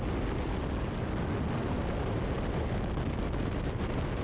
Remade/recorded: recorded